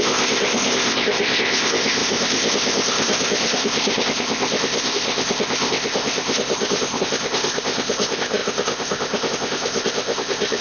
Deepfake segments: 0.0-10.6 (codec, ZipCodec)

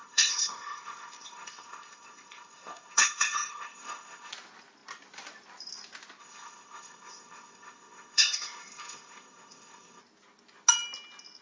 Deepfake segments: 0.0-4.3 (codec, ZipCodec); 6.2-10.0

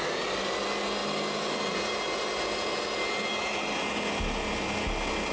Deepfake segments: none

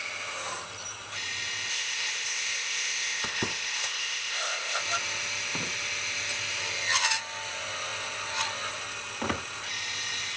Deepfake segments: 1.7-4.8 (codec, ZipCodec)

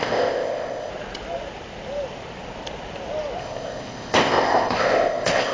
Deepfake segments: 0.0-0.9 (codec, ZipCodec); 3.4-5.5

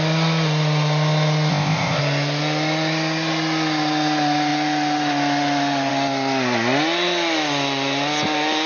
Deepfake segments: 1.5-2.0 (codec, ZipCodec)

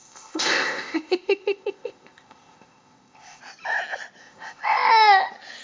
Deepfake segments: 0.0-3.4 (codec, ZipCodec); 4.2-4.9

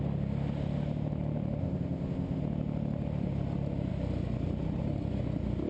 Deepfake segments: 1.6-2.4 (codec, ZipCodec)